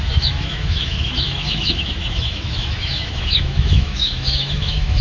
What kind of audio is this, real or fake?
fake